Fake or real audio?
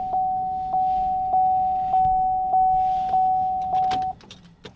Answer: real